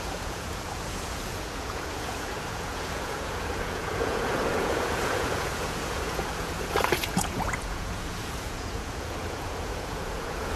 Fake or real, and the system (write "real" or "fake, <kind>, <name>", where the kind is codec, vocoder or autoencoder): fake, vocoder, Vocos